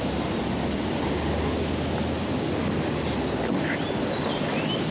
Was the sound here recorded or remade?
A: recorded